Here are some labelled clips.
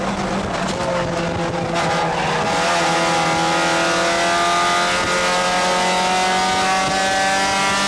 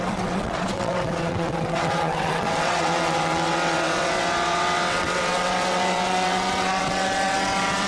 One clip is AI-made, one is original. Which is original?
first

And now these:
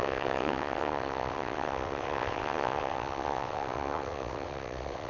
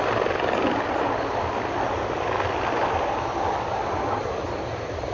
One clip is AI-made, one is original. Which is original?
second